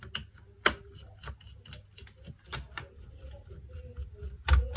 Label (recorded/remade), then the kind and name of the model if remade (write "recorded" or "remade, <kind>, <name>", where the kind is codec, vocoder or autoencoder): recorded